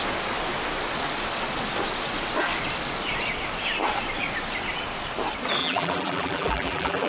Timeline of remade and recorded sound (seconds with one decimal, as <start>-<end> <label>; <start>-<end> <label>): 0.0-5.6 recorded; 5.6-7.1 remade